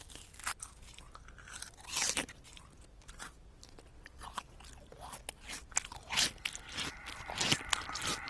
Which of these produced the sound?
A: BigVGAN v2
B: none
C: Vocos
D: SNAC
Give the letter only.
B